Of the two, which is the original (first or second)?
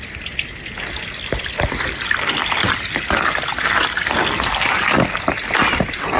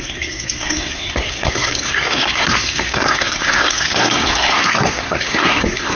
first